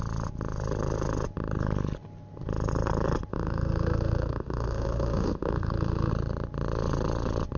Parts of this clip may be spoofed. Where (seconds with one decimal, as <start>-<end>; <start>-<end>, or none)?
3.3-6.1